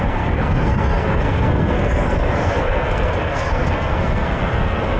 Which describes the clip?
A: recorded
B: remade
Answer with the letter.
B